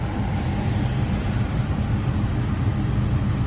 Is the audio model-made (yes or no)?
no